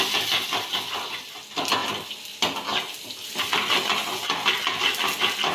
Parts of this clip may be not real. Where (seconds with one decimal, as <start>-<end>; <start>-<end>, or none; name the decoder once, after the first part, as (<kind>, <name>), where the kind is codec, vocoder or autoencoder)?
none